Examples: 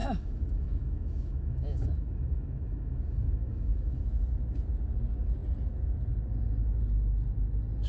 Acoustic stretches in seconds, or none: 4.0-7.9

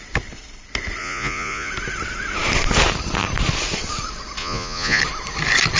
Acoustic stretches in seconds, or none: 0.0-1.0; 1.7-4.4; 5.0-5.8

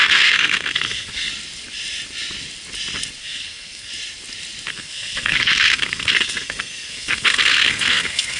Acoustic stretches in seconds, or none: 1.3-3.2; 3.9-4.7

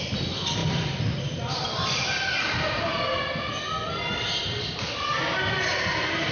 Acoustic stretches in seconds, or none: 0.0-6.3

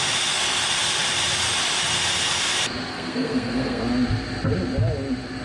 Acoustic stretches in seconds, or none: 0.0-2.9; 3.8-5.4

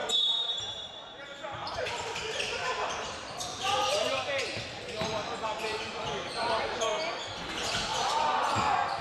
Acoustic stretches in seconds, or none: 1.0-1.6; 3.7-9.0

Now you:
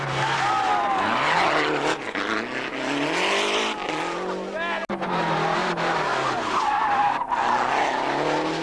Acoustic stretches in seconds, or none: 0.0-8.6